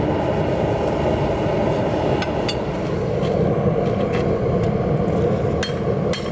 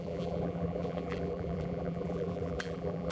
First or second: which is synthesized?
second